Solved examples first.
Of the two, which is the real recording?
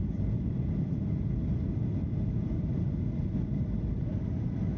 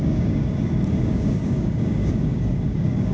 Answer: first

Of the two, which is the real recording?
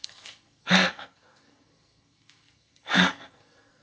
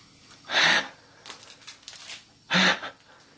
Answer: second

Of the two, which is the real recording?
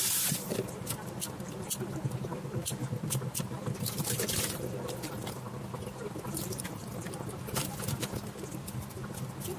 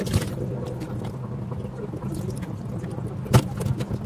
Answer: second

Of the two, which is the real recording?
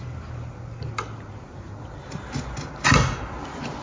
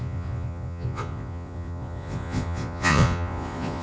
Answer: first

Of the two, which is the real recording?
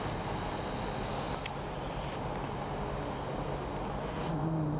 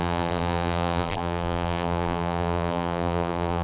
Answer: first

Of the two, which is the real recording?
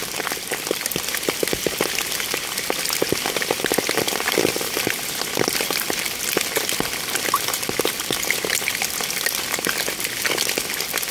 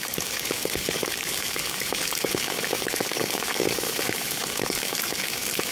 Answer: first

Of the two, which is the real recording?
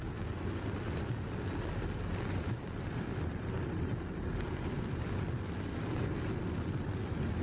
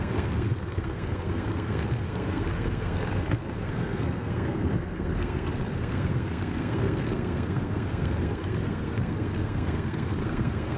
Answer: first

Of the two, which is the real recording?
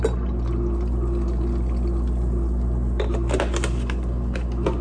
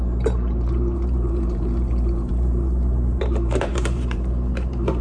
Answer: first